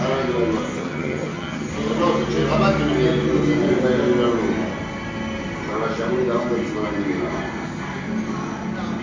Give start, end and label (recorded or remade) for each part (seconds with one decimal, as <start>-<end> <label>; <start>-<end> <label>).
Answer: 0.0-0.8 recorded; 0.8-1.7 remade; 1.7-9.0 recorded